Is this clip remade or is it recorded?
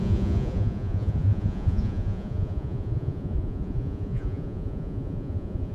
remade